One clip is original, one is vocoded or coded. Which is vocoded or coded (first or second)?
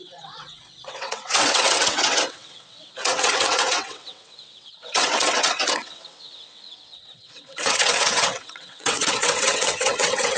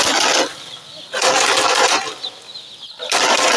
first